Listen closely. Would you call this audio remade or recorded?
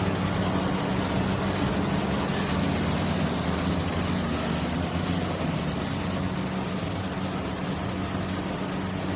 recorded